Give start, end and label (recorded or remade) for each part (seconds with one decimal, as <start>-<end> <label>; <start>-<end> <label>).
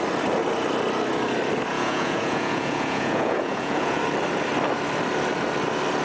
0.0-1.7 recorded; 1.7-4.0 remade; 4.0-6.0 recorded